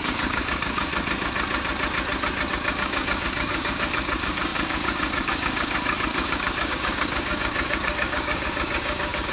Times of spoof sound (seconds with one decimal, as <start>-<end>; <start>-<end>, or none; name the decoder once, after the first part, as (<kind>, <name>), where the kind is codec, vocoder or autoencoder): 0.0-0.9 (codec, DAC); 2.5-9.3